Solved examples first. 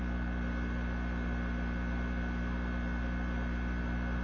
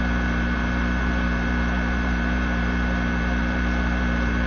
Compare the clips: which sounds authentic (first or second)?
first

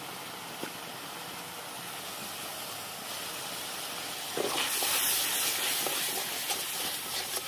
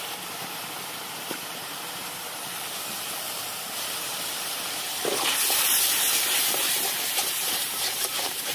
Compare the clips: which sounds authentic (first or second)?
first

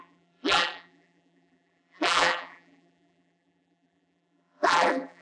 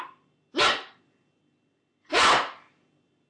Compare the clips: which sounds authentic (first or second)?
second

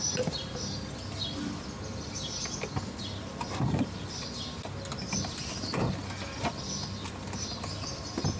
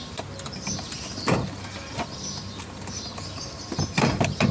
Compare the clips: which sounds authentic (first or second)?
first